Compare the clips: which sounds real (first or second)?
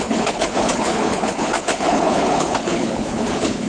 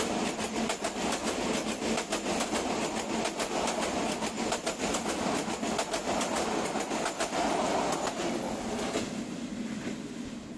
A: second